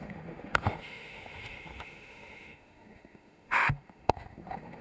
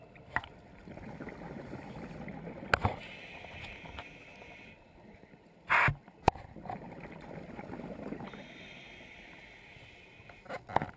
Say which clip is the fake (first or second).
first